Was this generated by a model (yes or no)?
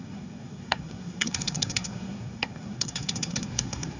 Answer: yes